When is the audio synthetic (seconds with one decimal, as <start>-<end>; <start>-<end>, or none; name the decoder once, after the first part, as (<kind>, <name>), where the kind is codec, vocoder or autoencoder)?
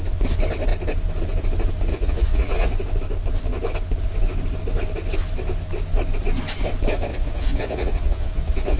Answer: 1.9-2.7 (vocoder, Vocos); 7.1-8.8